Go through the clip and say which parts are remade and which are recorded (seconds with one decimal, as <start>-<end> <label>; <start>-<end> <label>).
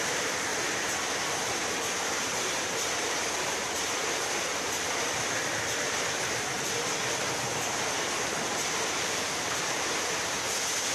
0.0-0.5 remade; 0.5-1.1 recorded; 1.1-4.0 remade; 4.0-7.4 recorded; 7.4-10.9 remade